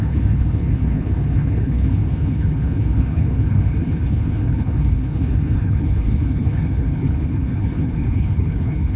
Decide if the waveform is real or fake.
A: fake